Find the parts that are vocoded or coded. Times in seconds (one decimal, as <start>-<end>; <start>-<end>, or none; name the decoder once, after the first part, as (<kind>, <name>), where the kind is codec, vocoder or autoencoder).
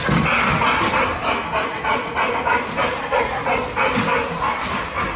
1.7-2.3 (vocoder, Vocos); 2.9-3.6